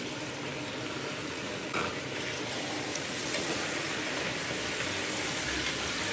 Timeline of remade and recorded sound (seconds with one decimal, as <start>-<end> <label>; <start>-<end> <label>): 0.0-1.2 recorded; 1.2-1.9 remade; 1.9-2.9 recorded; 2.9-4.0 remade; 4.0-6.1 recorded